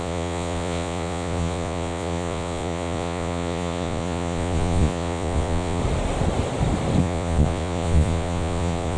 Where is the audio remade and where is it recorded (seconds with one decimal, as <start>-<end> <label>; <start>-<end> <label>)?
0.0-5.8 remade; 5.8-7.0 recorded; 7.0-9.0 remade